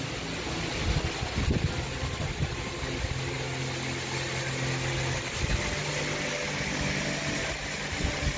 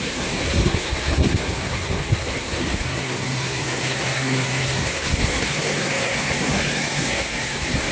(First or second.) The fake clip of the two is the second